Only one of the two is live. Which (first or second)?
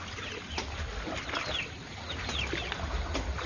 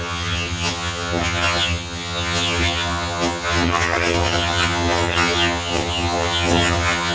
first